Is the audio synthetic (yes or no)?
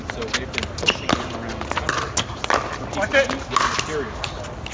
no